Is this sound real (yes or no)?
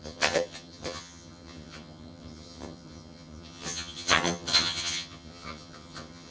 no